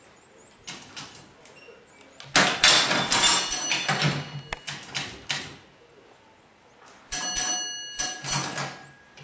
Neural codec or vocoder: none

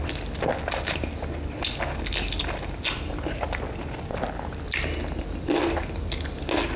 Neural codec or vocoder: none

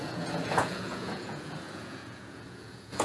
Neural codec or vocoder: vocoder, Vocos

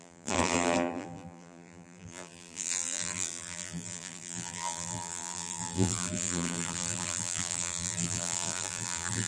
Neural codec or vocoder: vocoder, BigVGAN v2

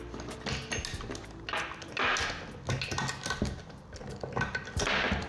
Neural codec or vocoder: none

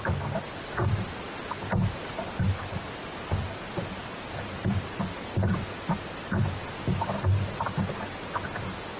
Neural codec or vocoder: none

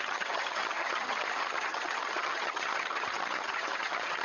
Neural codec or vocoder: vocoder, HiFi-GAN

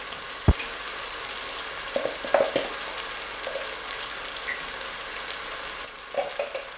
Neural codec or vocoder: none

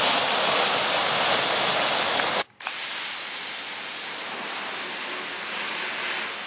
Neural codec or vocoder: none